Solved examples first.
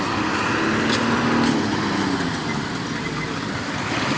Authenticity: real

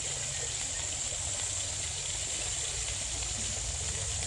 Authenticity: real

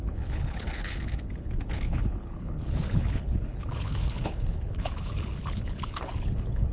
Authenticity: fake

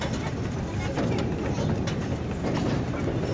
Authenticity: real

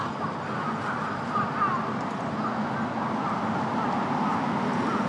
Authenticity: real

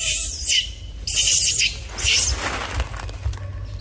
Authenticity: real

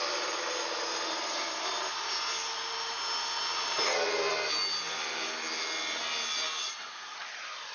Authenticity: real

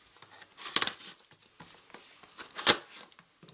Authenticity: real